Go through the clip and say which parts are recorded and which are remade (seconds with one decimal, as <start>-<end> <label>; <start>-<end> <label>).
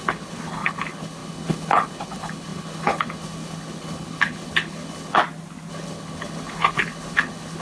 0.0-5.2 remade; 5.2-5.7 recorded; 5.7-7.6 remade